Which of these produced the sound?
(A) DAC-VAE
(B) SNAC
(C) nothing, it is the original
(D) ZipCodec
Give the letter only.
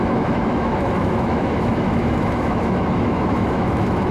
A